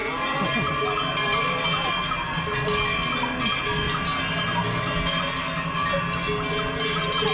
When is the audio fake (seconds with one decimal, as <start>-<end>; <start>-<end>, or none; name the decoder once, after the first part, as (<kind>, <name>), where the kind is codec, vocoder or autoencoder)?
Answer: none